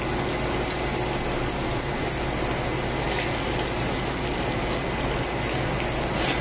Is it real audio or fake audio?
real